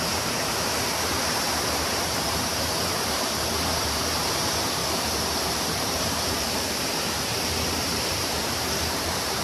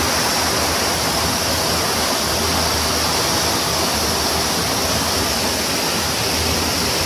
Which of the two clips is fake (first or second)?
first